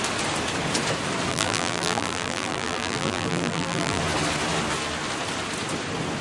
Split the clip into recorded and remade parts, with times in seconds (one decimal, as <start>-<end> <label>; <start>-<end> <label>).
0.0-1.3 recorded; 1.3-4.0 remade; 4.0-6.2 recorded